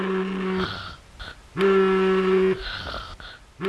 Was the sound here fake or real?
real